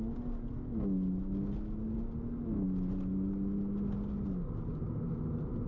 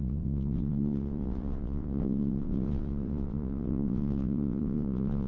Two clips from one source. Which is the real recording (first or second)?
first